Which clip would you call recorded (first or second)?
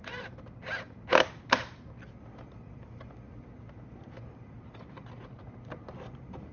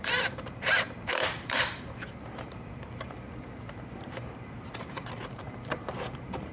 first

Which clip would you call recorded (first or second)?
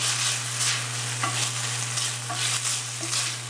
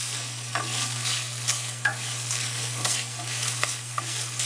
first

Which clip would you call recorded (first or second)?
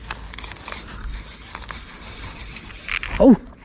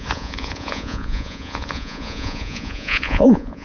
first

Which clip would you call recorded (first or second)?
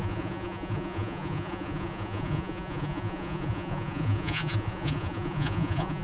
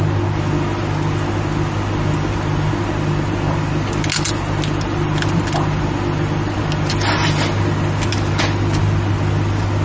second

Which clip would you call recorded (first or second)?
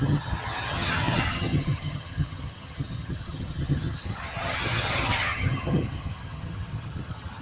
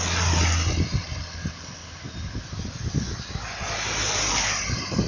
second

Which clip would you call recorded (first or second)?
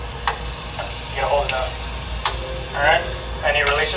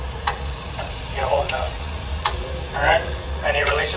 first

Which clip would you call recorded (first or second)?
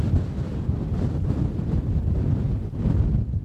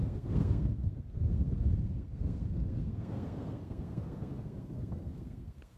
first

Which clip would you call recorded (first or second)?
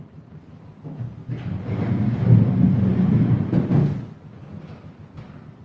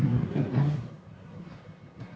first